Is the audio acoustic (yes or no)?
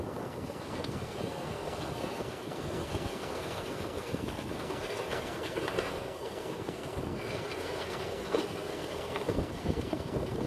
no